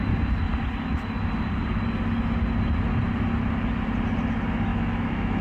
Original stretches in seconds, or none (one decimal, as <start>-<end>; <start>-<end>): 0.0-4.7